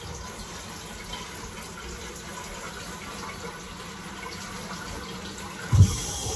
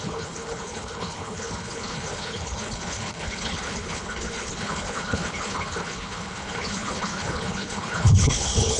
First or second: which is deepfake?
second